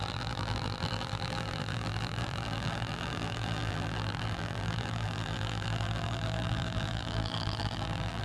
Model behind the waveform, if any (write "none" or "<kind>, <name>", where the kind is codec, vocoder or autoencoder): vocoder, BigVGAN v2